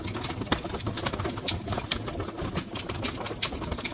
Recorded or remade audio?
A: recorded